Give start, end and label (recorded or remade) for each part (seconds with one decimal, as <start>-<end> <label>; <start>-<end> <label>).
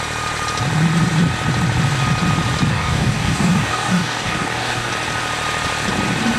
0.0-2.7 recorded; 2.7-4.9 remade; 4.9-6.4 recorded